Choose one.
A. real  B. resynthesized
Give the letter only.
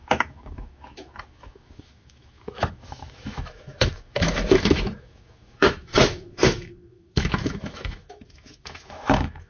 B